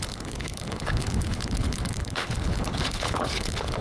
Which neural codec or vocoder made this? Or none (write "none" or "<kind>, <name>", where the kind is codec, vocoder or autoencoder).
codec, HILCodec